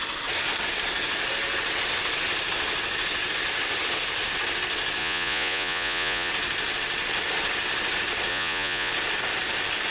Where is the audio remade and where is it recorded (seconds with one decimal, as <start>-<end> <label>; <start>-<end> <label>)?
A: 0.0-5.0 recorded; 5.0-6.3 remade; 6.3-8.3 recorded; 8.3-8.9 remade; 8.9-9.9 recorded